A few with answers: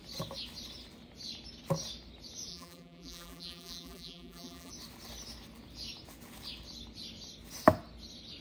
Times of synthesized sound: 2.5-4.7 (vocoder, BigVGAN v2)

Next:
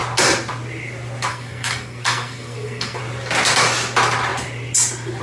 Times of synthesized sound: 1.3-3.0 (codec, SNAC)

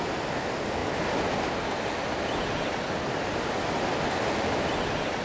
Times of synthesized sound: none

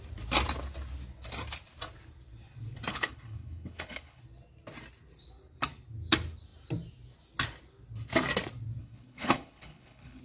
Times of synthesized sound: 2.9-4.2 (codec, HILCodec); 8.8-10.2